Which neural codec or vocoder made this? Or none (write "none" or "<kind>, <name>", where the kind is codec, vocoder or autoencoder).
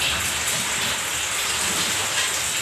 none